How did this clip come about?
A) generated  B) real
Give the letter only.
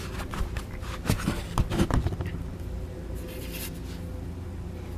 B